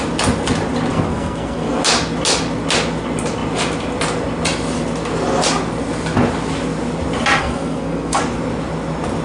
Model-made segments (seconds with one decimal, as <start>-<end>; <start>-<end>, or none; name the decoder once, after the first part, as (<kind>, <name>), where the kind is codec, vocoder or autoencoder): 0.9-1.8 (codec, SNAC); 7.4-8.2